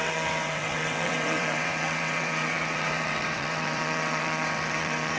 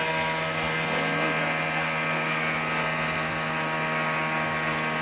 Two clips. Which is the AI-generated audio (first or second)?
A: first